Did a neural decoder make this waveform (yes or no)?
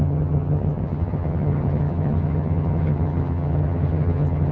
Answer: yes